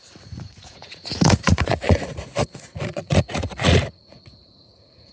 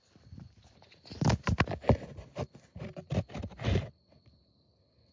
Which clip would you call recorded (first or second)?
second